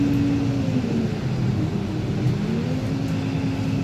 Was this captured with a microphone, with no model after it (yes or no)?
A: yes